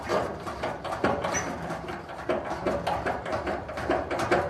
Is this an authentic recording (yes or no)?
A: no